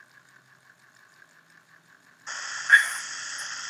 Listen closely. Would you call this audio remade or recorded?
recorded